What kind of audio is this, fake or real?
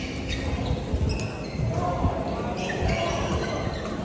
real